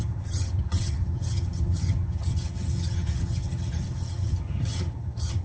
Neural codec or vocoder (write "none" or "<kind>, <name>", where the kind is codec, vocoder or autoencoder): vocoder, HiFi-GAN